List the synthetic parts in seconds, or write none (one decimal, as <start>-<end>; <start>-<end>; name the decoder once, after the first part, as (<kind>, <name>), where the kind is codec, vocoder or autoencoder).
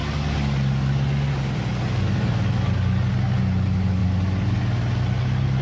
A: none